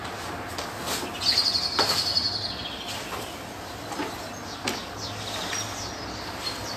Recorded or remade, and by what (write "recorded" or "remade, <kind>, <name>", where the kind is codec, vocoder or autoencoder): recorded